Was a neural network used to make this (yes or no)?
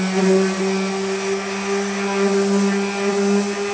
no